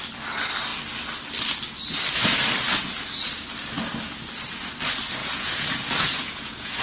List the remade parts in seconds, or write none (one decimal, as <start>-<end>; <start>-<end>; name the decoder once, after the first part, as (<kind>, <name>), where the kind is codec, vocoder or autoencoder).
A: 5.2-6.8 (vocoder, Vocos)